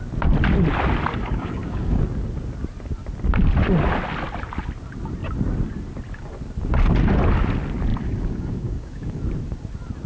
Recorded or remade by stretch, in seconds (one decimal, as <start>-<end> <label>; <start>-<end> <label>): 0.0-1.1 recorded; 1.1-2.0 remade; 2.0-7.9 recorded; 7.9-9.2 remade; 9.2-10.1 recorded